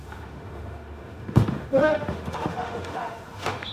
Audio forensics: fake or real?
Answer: fake